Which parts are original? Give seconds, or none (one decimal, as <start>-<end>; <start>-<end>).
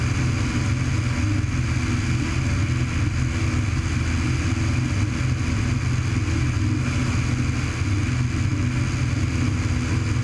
0.0-10.2